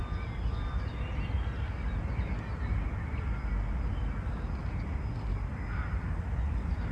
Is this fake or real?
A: real